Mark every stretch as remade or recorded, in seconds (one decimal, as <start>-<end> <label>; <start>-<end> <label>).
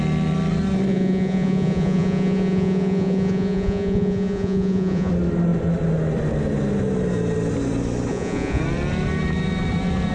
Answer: 0.0-0.9 recorded; 0.9-5.1 remade; 5.1-8.1 recorded; 8.1-8.6 remade; 8.6-10.1 recorded